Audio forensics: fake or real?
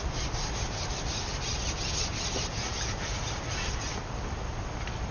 real